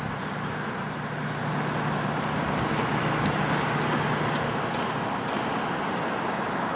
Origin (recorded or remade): recorded